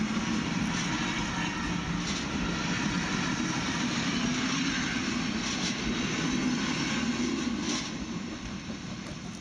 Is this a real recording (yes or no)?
yes